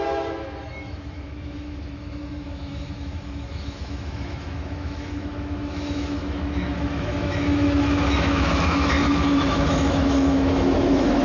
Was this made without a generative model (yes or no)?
no